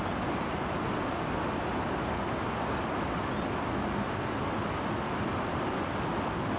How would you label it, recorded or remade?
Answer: recorded